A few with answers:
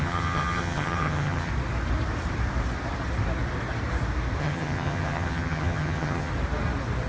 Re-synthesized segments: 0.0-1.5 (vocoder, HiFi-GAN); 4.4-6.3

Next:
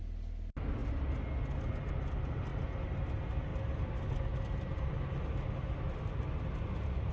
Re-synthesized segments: none